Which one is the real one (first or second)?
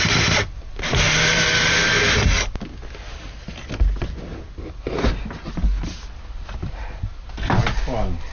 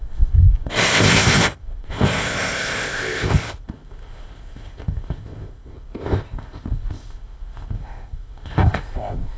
first